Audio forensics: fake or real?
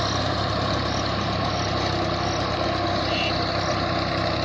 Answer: real